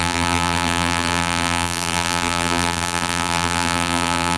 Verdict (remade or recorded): remade